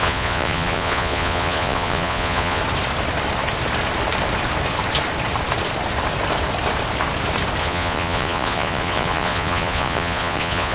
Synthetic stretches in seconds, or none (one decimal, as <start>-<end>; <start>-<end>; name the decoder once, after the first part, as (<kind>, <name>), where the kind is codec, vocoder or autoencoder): 0.0-2.6 (vocoder, Vocos); 7.6-10.7